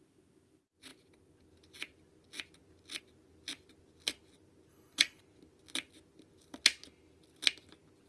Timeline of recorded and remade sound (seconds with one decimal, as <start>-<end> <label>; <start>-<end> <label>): 0.0-4.7 recorded; 4.7-5.2 remade; 5.2-8.1 recorded